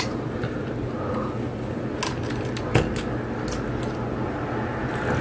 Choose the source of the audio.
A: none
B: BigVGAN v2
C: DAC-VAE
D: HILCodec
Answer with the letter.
A